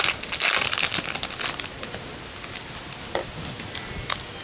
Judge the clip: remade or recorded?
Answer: recorded